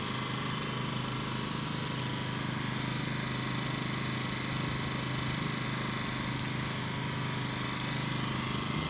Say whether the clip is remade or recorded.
recorded